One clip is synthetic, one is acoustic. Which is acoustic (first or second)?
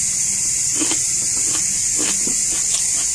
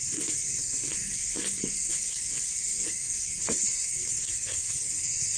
first